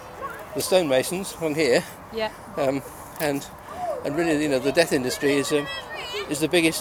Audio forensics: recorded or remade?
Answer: recorded